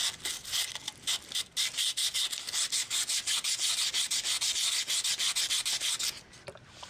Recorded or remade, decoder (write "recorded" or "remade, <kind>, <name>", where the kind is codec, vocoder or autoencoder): recorded